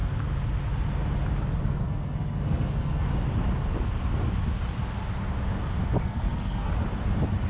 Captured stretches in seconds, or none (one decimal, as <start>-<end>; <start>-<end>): 0.0-1.6; 3.1-6.0; 6.7-7.5